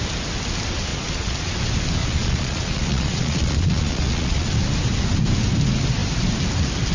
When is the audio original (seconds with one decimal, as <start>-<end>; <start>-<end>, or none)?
0.0-0.9; 1.5-2.0; 4.5-6.9